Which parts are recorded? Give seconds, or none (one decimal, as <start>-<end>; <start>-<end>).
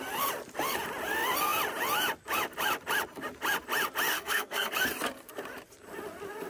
0.0-4.1; 4.7-6.5